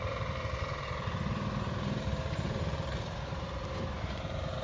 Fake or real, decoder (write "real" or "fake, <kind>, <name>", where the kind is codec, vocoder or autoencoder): fake, vocoder, BigVGAN v2